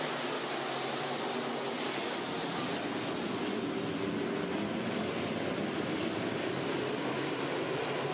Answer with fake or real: real